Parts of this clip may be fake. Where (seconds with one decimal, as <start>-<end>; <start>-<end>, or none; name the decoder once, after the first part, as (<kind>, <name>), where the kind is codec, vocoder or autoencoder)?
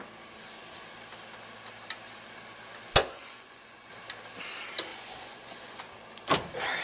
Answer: 3.0-3.9 (vocoder, Vocos); 4.9-5.8